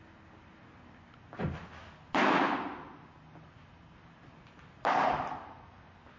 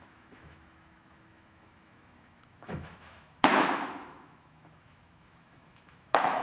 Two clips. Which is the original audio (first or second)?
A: first